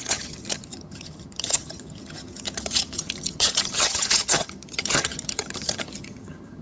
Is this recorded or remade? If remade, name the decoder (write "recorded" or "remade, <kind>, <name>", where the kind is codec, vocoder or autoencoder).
remade, vocoder, HiFi-GAN